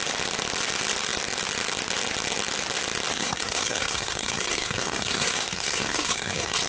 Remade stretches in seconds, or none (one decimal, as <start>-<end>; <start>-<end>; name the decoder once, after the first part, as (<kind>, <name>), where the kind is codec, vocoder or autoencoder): 3.1-6.7 (codec, SNAC)